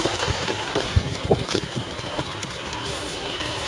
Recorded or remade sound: remade